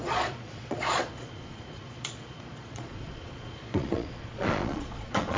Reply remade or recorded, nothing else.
remade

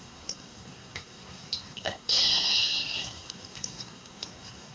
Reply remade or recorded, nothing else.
remade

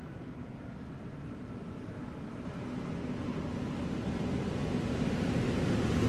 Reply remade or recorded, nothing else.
recorded